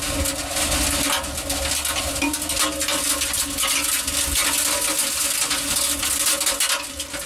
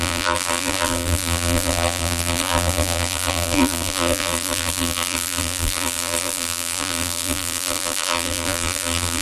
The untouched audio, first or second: first